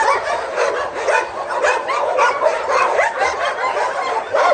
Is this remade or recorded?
recorded